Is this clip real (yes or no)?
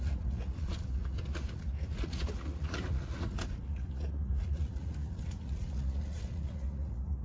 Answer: no